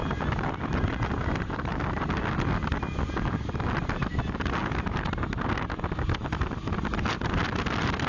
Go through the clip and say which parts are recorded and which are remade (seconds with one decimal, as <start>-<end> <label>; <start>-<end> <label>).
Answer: 0.0-8.1 recorded